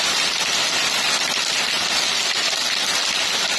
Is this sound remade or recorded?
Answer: recorded